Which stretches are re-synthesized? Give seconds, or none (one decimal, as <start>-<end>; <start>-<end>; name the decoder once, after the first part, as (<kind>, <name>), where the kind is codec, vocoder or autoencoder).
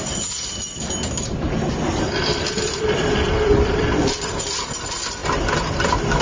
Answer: 1.9-4.6 (vocoder, BigVGAN v2); 5.2-6.2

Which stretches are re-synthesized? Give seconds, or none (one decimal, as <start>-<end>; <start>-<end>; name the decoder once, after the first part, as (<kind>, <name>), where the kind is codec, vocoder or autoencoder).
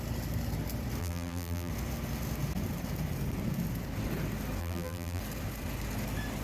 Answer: 1.0-1.7 (vocoder, BigVGAN v2); 4.6-5.2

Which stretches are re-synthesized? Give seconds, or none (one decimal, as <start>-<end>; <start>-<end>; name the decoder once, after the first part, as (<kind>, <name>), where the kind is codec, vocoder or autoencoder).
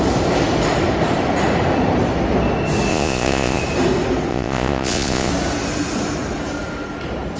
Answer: 2.9-3.6 (vocoder, Vocos); 4.3-5.3